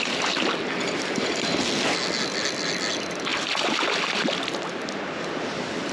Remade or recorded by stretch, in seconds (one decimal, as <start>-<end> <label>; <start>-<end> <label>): 0.0-5.9 recorded